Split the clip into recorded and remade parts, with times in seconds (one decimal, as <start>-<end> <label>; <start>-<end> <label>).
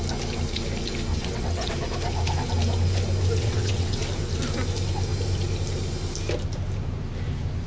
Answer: 0.0-1.1 recorded; 1.1-1.7 remade; 1.7-3.4 recorded; 3.4-4.0 remade; 4.0-7.7 recorded